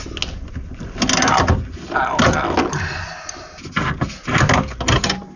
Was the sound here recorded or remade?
recorded